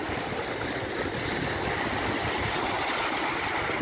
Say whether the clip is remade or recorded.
recorded